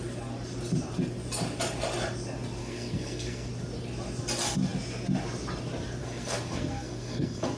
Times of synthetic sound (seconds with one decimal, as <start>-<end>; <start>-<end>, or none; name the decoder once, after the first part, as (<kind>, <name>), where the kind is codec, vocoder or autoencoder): 2.6-3.5 (codec, SNAC); 6.0-7.6